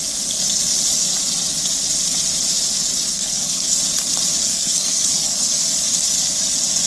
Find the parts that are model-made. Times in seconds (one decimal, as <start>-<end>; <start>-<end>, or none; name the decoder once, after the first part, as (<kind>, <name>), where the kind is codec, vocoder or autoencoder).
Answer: 3.1-3.8 (codec, SNAC); 4.4-5.6